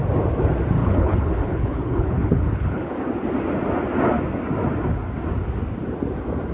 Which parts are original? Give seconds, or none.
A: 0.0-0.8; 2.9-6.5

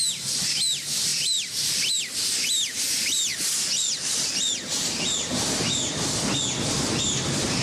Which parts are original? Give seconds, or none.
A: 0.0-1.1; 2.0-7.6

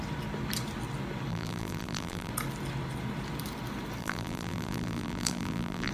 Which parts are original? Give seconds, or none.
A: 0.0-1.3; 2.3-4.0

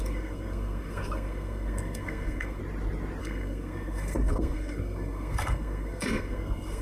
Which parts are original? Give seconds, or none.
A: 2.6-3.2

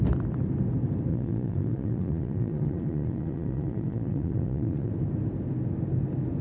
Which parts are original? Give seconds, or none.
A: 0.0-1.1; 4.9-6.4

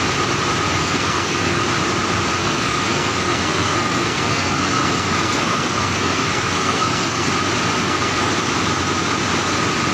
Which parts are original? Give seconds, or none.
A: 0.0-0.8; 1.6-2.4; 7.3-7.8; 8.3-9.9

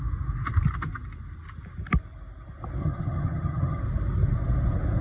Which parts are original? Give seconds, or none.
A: 0.0-2.8; 3.8-5.0

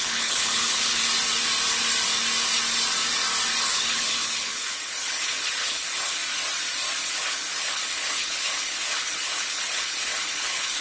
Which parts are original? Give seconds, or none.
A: 1.0-3.6; 6.2-7.1